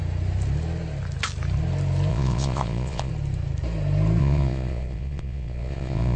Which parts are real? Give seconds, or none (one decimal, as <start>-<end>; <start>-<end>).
0.0-2.1; 3.1-4.2